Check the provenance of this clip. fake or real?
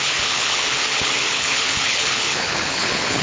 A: fake